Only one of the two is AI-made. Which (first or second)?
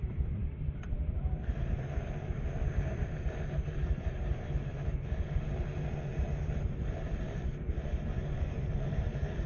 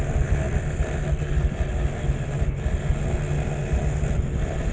first